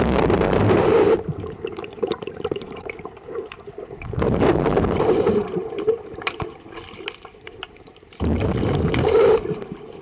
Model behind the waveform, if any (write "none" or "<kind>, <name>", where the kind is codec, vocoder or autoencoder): vocoder, BigVGAN v2